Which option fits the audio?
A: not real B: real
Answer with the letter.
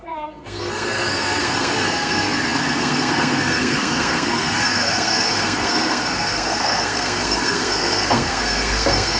A